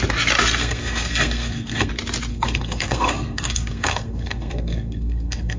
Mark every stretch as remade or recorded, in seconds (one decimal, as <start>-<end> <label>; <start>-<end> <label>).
0.0-0.6 recorded; 0.6-1.9 remade; 1.9-2.3 recorded; 2.3-5.6 remade